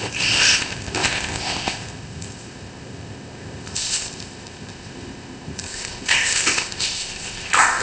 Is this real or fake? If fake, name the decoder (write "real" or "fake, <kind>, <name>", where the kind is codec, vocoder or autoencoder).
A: fake, codec, ZipCodec